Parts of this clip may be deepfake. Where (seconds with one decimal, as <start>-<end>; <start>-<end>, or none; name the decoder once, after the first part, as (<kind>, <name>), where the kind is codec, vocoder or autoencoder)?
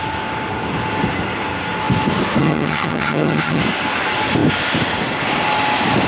2.4-3.6 (vocoder, HiFi-GAN)